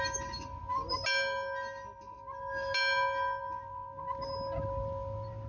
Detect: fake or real real